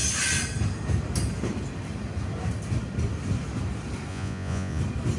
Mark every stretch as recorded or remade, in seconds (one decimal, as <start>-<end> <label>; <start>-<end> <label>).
0.0-4.1 recorded; 4.1-4.8 remade; 4.8-5.2 recorded